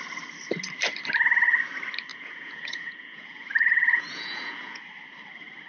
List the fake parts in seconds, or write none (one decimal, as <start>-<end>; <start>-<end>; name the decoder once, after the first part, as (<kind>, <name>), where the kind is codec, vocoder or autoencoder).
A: 2.1-4.8 (vocoder, Vocos)